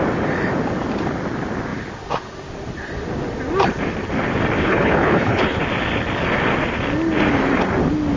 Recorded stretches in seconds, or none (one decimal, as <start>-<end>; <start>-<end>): 0.0-4.6; 5.6-8.2